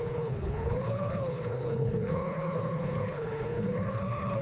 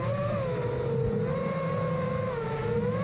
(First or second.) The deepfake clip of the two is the first